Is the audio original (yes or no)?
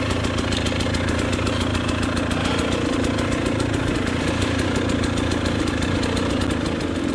yes